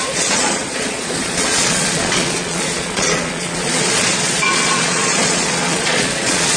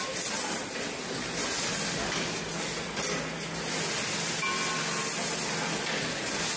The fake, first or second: first